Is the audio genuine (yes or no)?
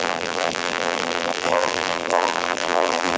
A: no